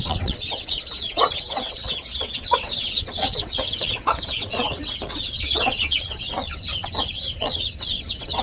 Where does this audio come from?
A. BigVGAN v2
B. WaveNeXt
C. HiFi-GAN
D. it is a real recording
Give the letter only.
B